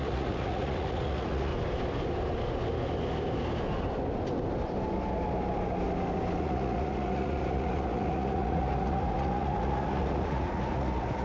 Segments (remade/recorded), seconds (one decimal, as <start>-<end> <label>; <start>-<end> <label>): 0.0-1.5 remade; 1.5-6.4 recorded; 6.4-11.2 remade